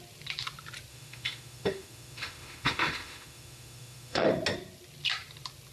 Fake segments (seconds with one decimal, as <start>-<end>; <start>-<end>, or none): 0.9-4.3